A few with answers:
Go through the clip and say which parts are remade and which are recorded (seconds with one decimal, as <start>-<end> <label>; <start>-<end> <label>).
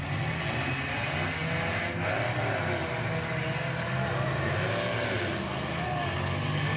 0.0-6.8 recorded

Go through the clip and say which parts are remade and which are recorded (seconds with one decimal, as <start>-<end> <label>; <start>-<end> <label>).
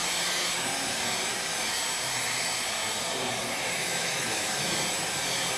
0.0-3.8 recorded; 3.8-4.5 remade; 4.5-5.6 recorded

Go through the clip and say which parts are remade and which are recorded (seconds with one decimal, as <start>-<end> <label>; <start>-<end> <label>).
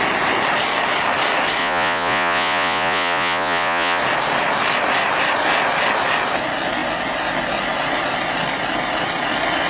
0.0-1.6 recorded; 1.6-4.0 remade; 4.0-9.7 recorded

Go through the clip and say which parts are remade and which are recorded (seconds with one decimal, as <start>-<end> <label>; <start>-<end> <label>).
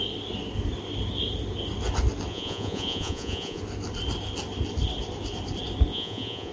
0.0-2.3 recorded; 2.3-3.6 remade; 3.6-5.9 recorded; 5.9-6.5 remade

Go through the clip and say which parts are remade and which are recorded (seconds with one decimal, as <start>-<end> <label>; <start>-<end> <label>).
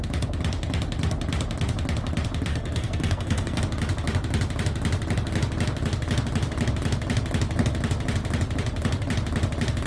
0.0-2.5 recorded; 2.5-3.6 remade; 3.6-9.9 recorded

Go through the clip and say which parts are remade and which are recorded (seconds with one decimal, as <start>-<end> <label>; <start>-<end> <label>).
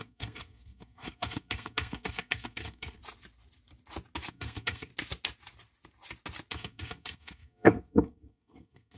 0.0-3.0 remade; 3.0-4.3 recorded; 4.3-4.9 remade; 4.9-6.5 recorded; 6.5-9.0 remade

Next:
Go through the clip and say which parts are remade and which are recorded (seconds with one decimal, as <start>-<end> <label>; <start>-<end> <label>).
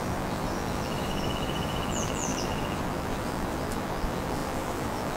0.0-5.2 remade